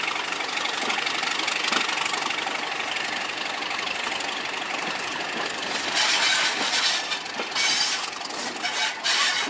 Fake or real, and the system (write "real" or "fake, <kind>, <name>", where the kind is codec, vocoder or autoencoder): real